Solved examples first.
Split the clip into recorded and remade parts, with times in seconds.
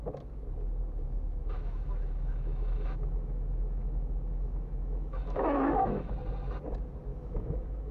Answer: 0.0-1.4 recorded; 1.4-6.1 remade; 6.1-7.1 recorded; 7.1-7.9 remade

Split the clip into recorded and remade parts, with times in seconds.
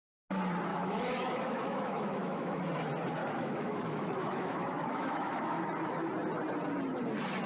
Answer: 0.0-0.7 recorded; 0.7-2.6 remade; 2.6-3.2 recorded; 3.2-5.6 remade; 5.6-7.5 recorded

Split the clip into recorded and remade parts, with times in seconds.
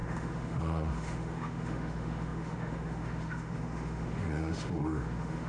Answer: 0.0-5.5 remade